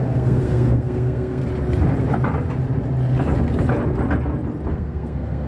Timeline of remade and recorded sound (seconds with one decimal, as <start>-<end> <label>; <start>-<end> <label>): 0.0-1.4 remade; 1.4-4.7 recorded; 4.7-5.5 remade